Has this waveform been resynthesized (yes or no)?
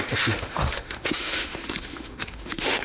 yes